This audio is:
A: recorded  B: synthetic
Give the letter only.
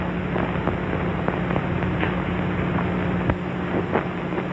A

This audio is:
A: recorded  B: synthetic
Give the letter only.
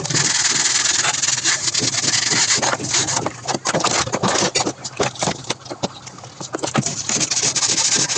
A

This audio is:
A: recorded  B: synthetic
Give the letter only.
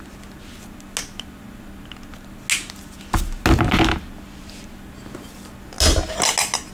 A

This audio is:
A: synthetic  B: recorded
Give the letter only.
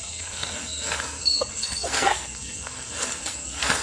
A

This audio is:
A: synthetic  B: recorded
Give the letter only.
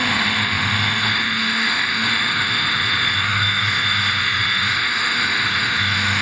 A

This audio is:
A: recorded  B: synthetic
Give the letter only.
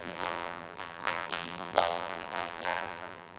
B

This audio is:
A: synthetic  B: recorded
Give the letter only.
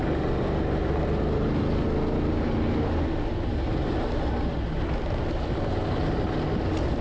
B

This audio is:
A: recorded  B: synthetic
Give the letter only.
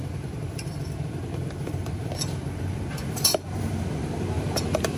B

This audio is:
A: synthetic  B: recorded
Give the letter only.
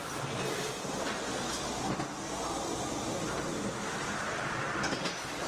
B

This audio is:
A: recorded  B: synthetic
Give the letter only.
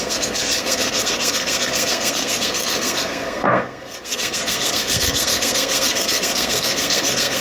B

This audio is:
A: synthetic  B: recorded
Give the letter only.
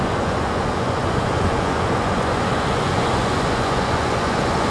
A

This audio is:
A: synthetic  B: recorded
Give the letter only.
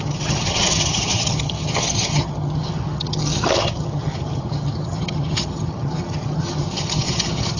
A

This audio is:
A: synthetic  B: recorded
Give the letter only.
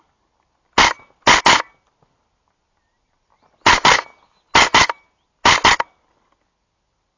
B